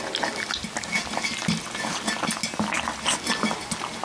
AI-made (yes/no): no